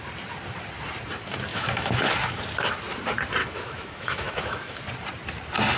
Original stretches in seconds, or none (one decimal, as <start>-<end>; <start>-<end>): 0.0-1.5; 2.1-3.4; 4.8-5.8